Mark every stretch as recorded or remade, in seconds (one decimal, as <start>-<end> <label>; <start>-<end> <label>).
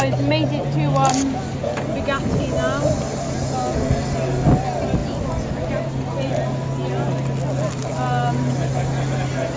0.0-9.6 recorded